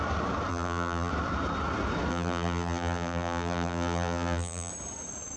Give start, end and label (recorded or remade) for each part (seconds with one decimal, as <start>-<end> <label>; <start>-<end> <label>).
0.0-0.5 recorded; 0.5-1.1 remade; 1.1-2.1 recorded; 2.1-4.7 remade; 4.7-5.4 recorded